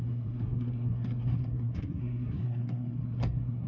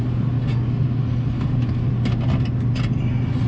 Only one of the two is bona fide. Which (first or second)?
second